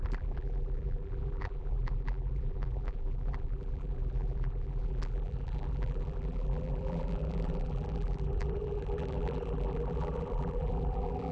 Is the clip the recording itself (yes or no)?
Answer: no